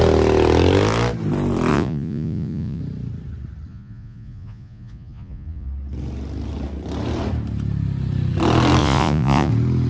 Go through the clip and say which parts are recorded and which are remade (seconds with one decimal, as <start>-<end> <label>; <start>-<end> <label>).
0.0-1.7 recorded; 1.7-2.8 remade; 2.8-3.7 recorded; 3.7-5.7 remade; 5.7-8.8 recorded; 8.8-9.5 remade; 9.5-9.9 recorded